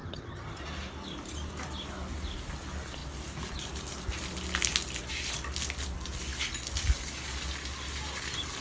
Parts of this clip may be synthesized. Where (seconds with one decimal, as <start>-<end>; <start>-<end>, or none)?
0.0-0.6